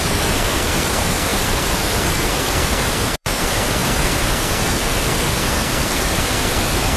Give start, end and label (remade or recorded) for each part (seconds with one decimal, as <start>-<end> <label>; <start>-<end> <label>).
0.0-7.0 remade